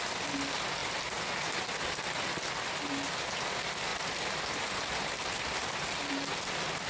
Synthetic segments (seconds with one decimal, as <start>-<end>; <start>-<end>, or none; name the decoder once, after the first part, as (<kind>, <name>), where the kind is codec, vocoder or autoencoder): none